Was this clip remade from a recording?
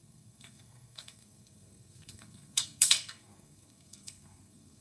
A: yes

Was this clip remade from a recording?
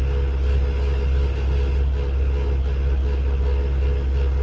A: no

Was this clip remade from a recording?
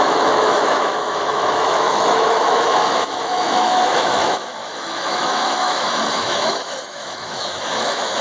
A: yes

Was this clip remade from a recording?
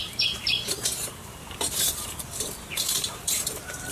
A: yes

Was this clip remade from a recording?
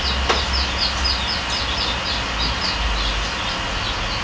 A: no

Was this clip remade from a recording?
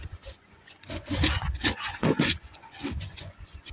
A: yes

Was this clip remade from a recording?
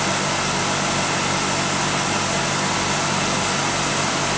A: no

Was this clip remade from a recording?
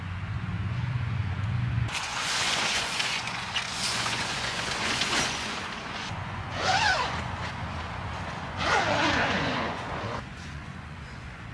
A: yes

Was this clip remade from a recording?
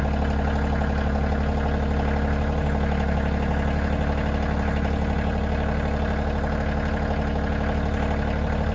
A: no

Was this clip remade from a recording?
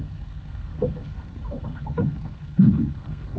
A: yes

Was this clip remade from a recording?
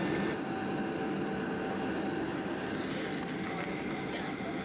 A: no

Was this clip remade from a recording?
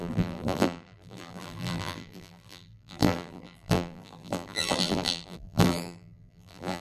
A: yes